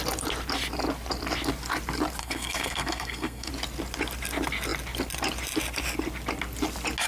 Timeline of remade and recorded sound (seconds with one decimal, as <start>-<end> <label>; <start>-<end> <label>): 0.0-2.2 recorded; 2.2-3.5 remade; 3.5-7.1 recorded